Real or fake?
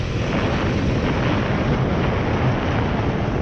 real